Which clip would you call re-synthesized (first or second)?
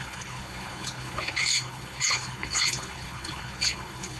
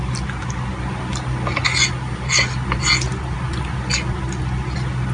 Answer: first